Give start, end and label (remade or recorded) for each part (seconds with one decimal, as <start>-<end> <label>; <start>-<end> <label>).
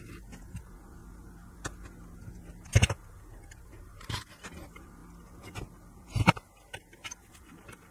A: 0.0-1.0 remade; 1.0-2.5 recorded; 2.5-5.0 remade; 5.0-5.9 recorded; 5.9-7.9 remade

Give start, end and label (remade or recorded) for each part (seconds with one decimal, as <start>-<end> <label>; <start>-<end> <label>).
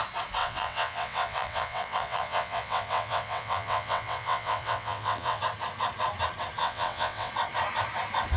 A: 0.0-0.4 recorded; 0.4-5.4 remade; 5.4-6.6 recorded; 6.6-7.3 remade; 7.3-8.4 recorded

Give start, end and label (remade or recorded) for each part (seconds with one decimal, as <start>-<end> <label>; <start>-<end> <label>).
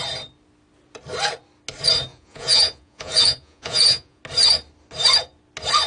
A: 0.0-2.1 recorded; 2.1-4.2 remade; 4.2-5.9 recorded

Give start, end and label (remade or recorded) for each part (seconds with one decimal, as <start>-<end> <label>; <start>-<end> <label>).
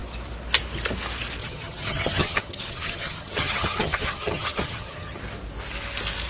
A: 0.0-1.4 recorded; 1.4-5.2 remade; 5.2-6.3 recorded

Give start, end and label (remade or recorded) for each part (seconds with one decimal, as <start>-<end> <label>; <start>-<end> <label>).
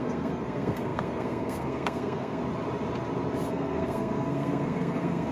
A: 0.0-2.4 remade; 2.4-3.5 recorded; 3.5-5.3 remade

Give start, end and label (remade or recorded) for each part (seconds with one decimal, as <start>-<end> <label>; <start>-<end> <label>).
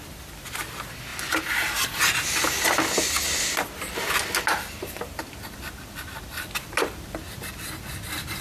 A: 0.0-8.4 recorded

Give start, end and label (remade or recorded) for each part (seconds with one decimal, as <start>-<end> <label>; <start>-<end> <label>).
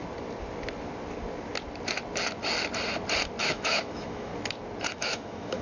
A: 0.0-3.4 recorded; 3.4-4.3 remade; 4.3-4.9 recorded; 4.9-5.6 remade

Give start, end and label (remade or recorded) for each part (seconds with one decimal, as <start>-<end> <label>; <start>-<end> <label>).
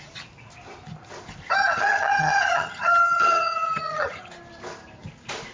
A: 0.0-1.6 recorded; 1.6-4.3 remade; 4.3-5.5 recorded